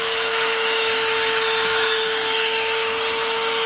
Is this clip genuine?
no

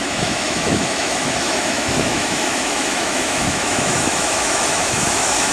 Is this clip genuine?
no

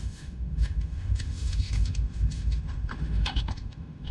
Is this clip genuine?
no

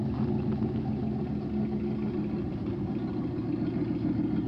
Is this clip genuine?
yes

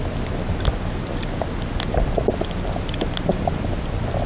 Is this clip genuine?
yes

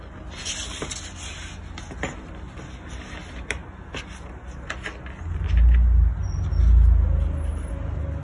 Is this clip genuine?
yes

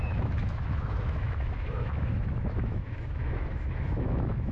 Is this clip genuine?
no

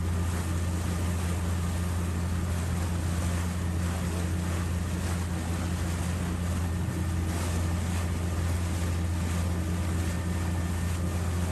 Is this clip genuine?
yes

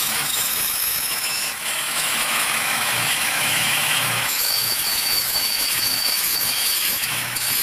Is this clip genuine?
no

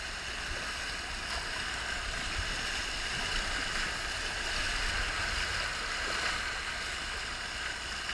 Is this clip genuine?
yes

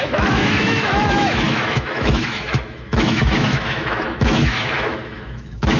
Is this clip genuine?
no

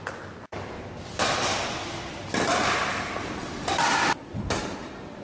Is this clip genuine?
yes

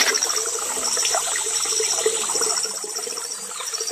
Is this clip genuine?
yes